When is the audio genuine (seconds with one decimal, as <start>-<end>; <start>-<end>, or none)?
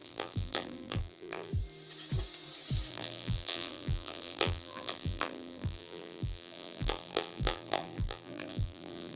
1.5-2.9